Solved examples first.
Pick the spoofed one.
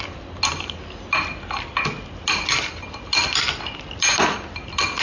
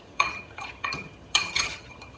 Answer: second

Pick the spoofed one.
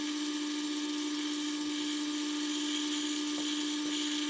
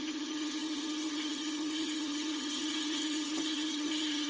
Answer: second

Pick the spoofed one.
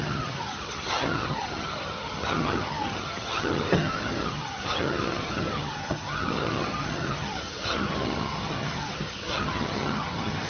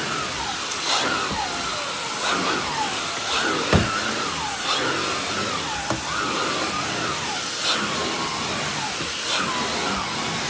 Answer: first